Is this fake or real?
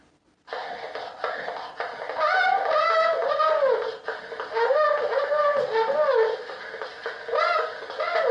real